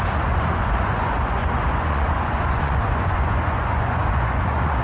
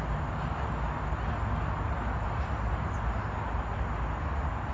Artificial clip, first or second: first